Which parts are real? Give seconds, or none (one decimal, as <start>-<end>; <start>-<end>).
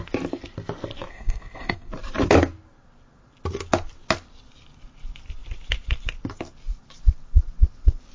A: 0.0-1.1; 1.9-8.1